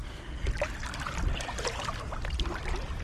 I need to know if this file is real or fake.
real